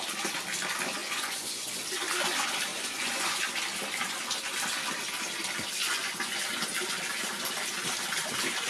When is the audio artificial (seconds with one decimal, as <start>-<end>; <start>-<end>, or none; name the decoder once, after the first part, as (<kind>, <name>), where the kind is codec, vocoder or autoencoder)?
1.0-1.7 (vocoder, Vocos); 2.7-3.4; 5.8-6.4